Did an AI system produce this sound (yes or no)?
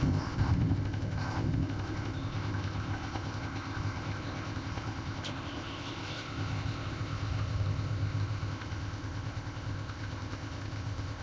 yes